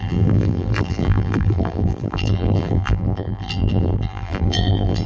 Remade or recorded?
remade